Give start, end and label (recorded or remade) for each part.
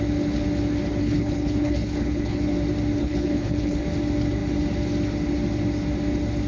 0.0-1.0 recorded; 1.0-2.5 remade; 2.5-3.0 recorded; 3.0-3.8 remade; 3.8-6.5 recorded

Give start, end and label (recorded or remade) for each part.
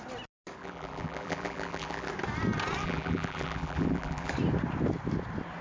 0.0-0.6 recorded; 0.6-2.1 remade; 2.1-2.8 recorded; 2.8-4.3 remade; 4.3-5.6 recorded